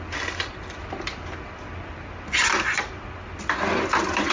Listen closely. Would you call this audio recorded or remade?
recorded